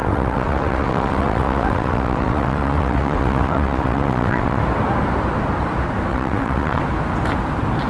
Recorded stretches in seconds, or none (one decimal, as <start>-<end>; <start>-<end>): 4.6-6.1; 6.8-7.9